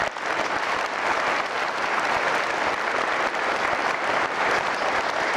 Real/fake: fake